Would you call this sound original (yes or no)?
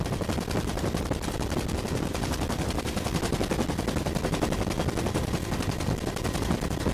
no